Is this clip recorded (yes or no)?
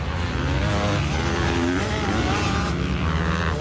yes